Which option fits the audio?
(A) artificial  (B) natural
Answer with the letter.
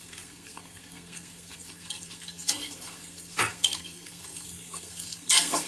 A